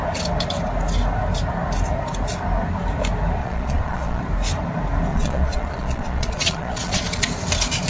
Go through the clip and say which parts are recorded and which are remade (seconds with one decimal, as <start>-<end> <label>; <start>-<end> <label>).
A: 0.0-3.4 recorded; 3.4-4.2 remade; 4.2-5.1 recorded; 5.1-7.3 remade; 7.3-7.9 recorded